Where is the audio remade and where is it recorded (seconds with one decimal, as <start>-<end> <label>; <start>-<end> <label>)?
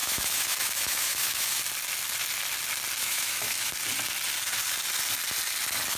0.0-1.6 remade; 1.6-3.0 recorded; 3.0-3.7 remade; 3.7-6.0 recorded